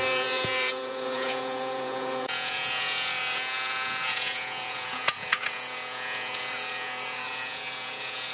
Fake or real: fake